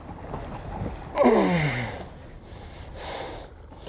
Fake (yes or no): no